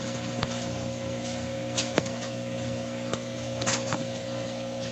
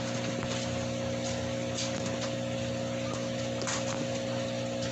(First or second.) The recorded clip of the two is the second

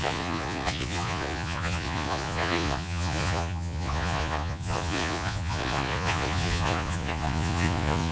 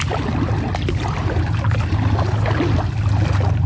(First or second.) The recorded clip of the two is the second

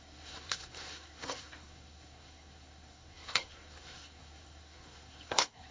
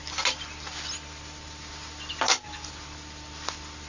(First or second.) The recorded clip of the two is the second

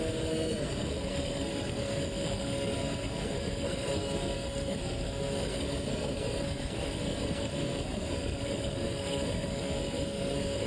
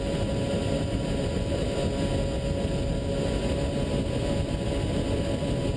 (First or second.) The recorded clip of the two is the second